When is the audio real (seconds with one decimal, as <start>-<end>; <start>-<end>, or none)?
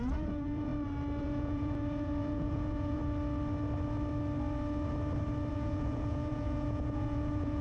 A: 0.7-1.2; 3.0-5.5